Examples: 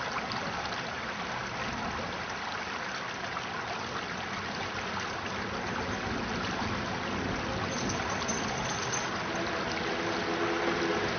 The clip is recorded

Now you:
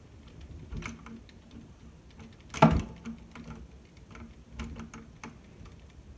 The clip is recorded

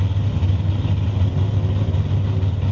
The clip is recorded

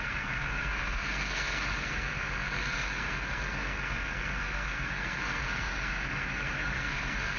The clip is remade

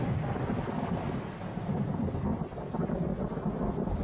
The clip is recorded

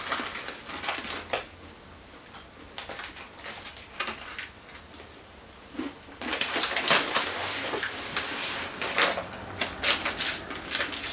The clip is recorded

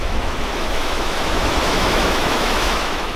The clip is remade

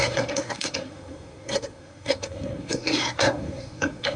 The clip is remade